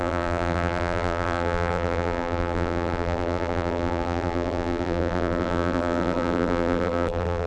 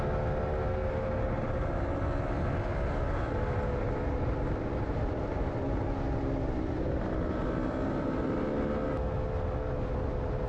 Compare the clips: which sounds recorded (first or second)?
second